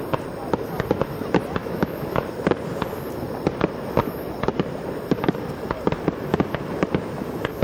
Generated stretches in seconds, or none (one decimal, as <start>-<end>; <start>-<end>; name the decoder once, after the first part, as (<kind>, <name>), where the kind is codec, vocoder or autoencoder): 1.6-2.2 (autoencoder, DAC-VAE)